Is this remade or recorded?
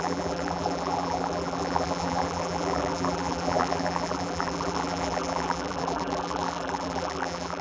remade